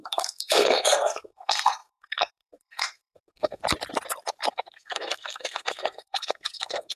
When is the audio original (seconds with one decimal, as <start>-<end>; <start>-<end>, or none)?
3.6-4.5